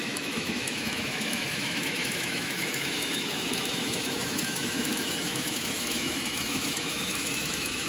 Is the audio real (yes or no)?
no